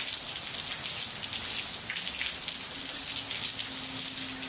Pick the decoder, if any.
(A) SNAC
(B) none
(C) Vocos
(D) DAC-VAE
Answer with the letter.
B